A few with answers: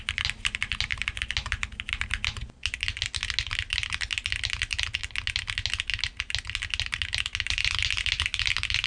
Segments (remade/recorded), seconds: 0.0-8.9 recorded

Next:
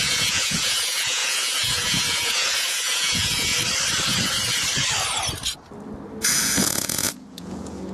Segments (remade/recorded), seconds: 0.0-3.5 remade; 3.5-6.3 recorded; 6.3-7.9 remade